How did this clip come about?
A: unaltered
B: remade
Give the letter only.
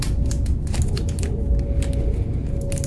A